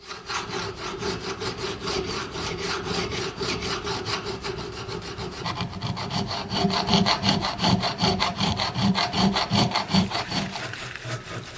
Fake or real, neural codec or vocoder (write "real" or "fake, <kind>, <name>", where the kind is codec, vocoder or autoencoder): fake, vocoder, BigVGAN v2